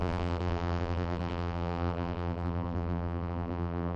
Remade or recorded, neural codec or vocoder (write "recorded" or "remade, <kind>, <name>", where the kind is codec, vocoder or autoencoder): remade, vocoder, BigVGAN v2